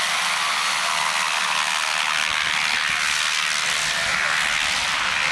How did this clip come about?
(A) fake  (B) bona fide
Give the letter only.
B